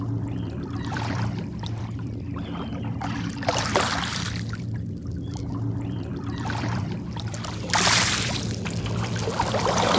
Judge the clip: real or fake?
fake